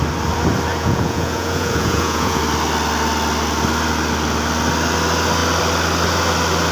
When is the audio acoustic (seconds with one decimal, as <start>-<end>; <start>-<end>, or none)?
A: 0.0-0.7; 2.4-6.7